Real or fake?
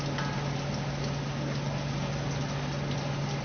real